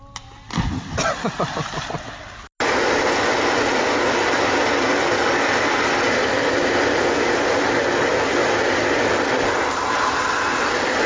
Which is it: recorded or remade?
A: recorded